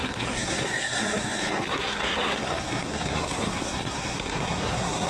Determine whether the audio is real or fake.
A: fake